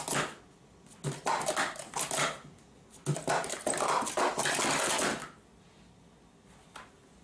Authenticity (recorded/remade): recorded